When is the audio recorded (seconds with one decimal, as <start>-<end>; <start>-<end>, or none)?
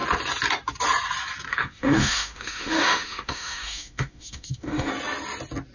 0.0-1.5; 4.9-5.7